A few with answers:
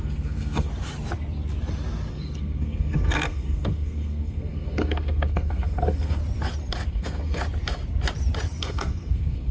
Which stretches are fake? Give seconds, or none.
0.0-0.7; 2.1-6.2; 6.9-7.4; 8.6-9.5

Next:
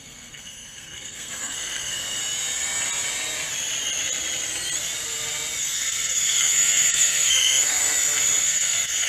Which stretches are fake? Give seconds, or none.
0.0-2.2; 5.6-7.8; 8.4-9.1

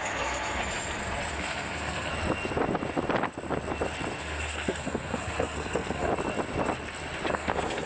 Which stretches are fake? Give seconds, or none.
0.0-0.6; 1.3-2.1; 4.2-6.1; 7.3-7.9

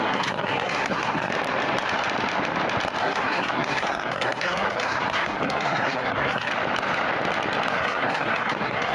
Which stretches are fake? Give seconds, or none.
0.0-1.3; 3.0-6.5; 7.7-8.9

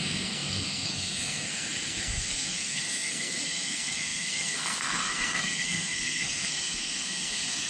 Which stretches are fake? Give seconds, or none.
0.0-7.7